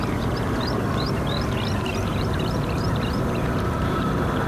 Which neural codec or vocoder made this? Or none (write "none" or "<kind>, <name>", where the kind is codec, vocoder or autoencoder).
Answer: vocoder, BigVGAN v2